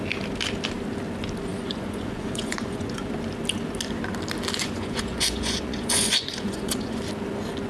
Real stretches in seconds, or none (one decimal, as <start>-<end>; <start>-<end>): 0.0-1.5; 3.1-4.6; 7.0-7.7